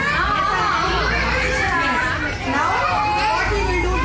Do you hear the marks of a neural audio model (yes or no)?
no